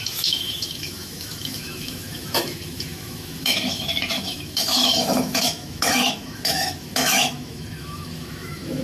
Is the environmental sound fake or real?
fake